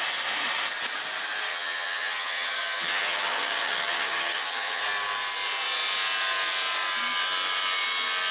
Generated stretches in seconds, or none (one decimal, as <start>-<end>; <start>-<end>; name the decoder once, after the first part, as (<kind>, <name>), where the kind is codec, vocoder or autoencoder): 1.5-4.8 (vocoder, HiFi-GAN)